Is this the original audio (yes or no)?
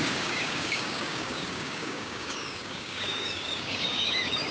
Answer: no